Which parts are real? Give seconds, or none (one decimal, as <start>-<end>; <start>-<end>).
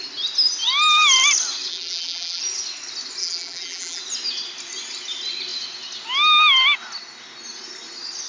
0.0-1.7; 2.4-3.2; 4.0-8.3